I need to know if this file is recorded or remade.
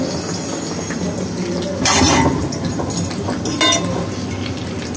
recorded